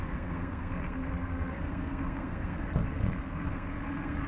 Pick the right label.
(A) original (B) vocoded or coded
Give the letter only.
B